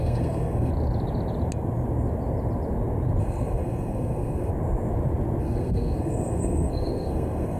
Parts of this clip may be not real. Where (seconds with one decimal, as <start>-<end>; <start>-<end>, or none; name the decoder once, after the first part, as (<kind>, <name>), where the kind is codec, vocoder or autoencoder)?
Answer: 0.0-0.7 (codec, SNAC); 3.2-4.5; 5.4-7.6